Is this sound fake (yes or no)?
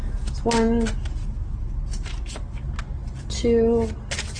no